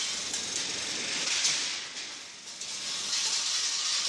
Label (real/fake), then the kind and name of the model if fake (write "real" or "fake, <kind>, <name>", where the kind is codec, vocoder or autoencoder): real